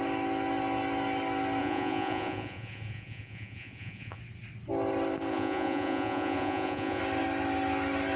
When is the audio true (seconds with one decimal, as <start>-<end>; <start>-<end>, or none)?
0.0-1.6; 4.2-5.3; 7.0-8.2